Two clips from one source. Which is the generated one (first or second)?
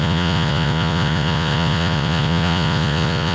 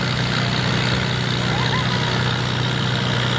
first